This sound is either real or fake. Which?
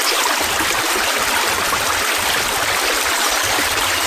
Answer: real